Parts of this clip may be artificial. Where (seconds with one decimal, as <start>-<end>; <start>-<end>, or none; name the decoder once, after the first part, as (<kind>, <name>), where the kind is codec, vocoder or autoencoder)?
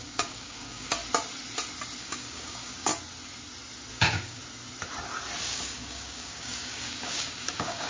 0.0-1.0 (codec, DAC); 2.0-2.9; 3.9-4.4; 5.4-7.9